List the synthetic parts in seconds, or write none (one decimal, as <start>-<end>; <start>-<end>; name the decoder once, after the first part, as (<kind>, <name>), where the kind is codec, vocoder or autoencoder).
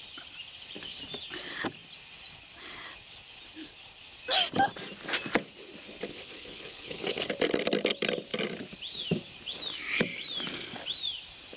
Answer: 6.1-7.3 (codec, HILCodec)